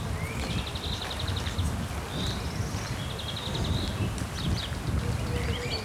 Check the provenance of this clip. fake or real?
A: real